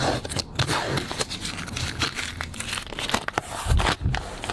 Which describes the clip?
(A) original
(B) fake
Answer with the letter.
A